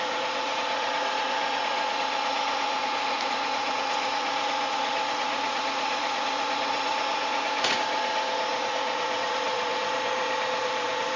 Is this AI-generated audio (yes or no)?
yes